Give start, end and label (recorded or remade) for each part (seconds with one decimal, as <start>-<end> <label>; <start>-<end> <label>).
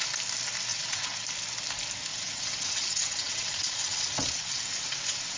0.0-0.7 recorded; 0.7-1.2 remade; 1.2-2.1 recorded; 2.1-5.4 remade